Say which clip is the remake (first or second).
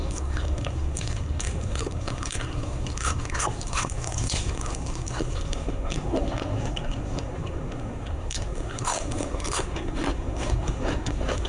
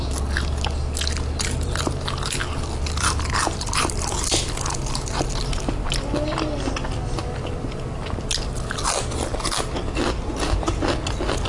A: first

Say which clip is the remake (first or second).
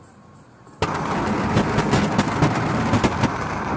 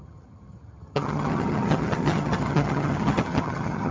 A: second